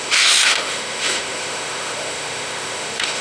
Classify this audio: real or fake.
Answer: fake